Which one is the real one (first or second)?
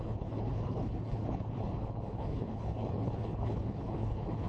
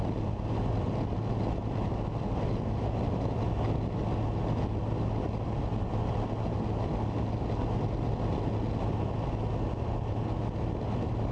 second